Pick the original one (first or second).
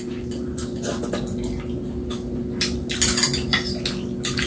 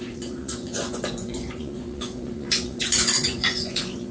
first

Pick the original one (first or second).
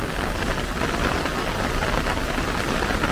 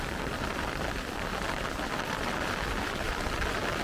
first